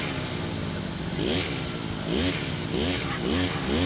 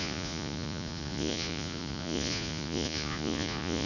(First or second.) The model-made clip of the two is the second